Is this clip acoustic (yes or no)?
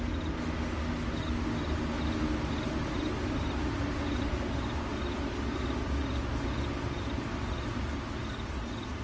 yes